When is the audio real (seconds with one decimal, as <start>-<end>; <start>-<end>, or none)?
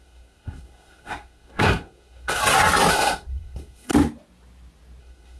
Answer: 2.4-2.9; 3.9-5.0